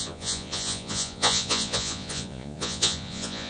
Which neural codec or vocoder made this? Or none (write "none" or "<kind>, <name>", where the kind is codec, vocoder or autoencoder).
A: vocoder, Vocos